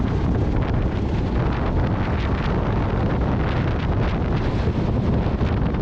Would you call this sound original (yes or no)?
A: yes